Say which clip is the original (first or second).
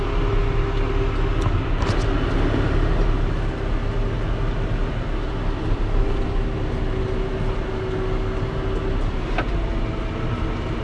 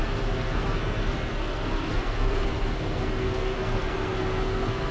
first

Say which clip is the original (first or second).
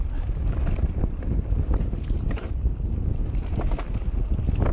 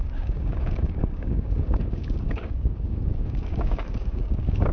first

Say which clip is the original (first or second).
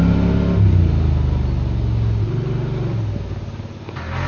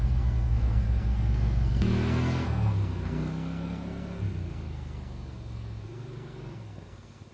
first